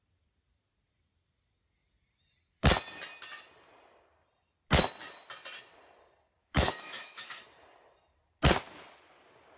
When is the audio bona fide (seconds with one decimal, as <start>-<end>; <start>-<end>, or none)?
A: 0.0-6.4; 7.4-9.6